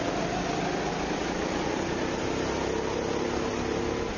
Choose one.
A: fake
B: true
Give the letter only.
B